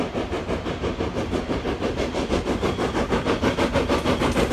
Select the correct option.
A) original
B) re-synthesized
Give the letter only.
A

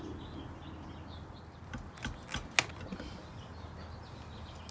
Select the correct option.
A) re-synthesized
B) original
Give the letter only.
B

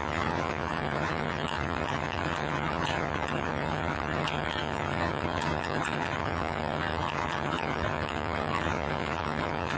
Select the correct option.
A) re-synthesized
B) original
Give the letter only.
A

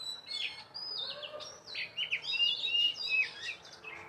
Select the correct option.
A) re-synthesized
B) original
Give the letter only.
B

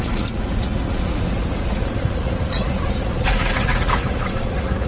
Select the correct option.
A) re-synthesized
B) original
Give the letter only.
A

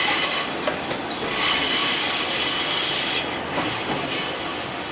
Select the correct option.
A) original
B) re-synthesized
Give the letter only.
A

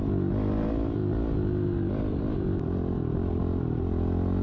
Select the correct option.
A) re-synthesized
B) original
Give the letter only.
B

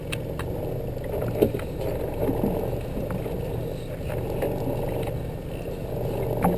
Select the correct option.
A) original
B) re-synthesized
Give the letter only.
A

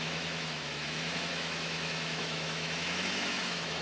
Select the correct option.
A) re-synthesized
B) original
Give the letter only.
A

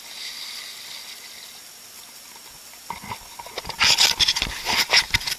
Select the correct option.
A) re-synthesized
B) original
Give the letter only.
B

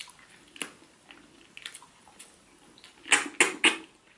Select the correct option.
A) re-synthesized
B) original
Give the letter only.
B